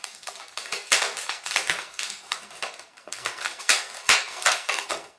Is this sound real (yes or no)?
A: no